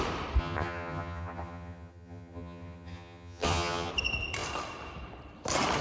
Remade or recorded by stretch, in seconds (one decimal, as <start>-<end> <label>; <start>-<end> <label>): 0.0-0.4 recorded; 0.4-3.9 remade; 3.9-5.8 recorded